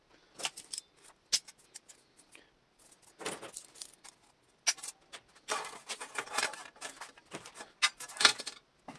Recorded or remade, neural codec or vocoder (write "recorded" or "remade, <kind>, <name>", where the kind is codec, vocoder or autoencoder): recorded